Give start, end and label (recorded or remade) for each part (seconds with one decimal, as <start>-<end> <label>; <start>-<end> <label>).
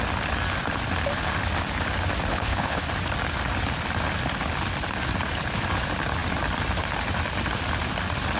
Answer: 0.0-2.3 recorded; 2.3-2.8 remade; 2.8-8.4 recorded